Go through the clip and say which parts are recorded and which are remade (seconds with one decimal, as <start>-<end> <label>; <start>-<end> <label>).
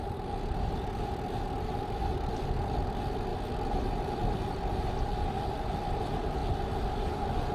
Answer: 0.0-7.5 recorded